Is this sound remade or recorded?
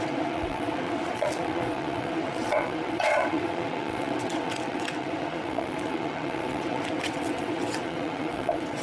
remade